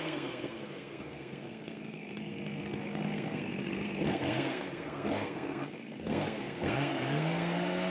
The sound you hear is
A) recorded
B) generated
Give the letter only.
B